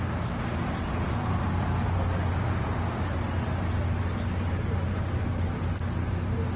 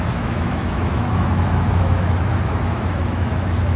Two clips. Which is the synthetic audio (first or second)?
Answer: second